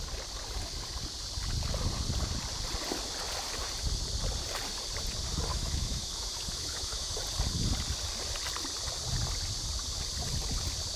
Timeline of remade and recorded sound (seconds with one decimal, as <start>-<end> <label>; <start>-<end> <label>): 0.0-5.5 recorded; 5.5-7.2 remade; 7.2-11.0 recorded